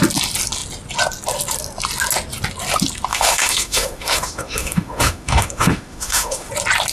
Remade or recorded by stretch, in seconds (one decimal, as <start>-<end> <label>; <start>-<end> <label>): 0.0-3.1 recorded; 3.1-6.5 remade; 6.5-6.9 recorded